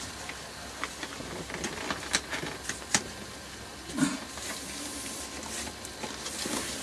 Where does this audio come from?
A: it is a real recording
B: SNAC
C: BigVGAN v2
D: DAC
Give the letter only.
A